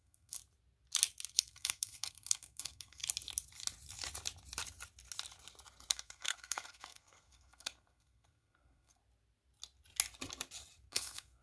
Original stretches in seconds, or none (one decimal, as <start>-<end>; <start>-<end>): 0.4-1.3; 3.0-5.9; 9.0-10.9